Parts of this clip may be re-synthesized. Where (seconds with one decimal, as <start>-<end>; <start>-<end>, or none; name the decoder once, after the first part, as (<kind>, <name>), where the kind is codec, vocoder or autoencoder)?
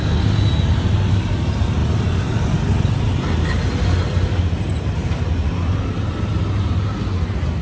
none